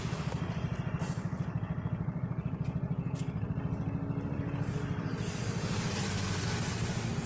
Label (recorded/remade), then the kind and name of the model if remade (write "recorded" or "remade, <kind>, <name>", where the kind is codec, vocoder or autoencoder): recorded